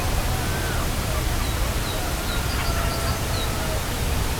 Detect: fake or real real